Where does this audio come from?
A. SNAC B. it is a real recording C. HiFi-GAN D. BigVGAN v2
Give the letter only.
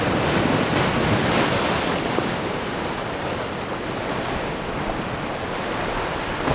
B